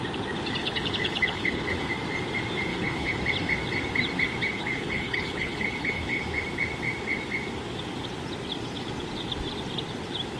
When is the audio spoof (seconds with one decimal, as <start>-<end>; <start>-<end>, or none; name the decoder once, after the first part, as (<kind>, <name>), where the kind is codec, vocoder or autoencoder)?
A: 0.6-1.9 (codec, HILCodec); 2.7-3.2; 4.5-6.2